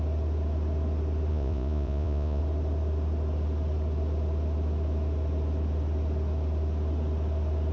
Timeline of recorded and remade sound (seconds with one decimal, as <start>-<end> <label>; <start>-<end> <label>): 0.0-1.3 recorded; 1.3-2.4 remade; 2.4-7.7 recorded